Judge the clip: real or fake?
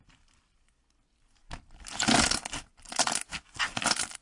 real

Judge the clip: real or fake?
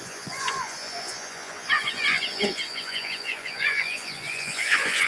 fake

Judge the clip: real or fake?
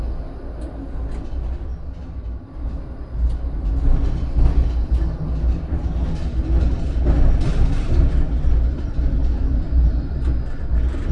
real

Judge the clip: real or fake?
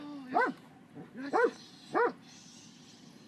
real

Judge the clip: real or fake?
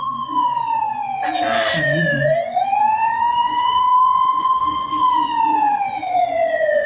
fake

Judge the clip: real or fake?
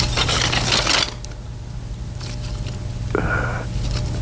real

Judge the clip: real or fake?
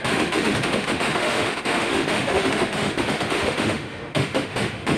fake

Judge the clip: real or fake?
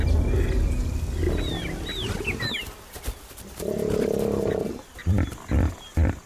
real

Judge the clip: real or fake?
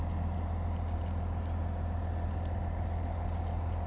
real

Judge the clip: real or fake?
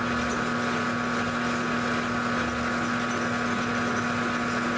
real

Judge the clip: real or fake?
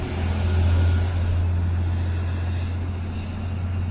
real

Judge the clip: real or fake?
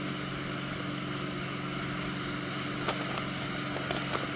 real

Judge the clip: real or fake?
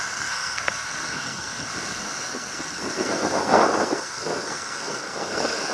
fake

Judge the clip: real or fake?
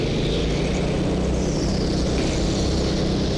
real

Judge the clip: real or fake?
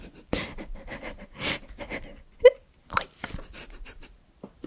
real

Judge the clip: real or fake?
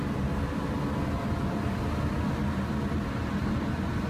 real